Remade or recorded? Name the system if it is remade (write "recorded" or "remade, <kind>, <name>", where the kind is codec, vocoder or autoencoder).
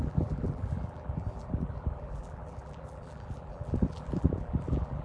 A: remade, vocoder, BigVGAN v2